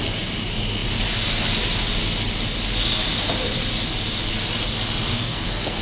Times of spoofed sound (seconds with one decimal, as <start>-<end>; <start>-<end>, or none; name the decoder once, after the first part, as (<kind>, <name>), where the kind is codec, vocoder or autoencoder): 5.1-5.8 (codec, SNAC)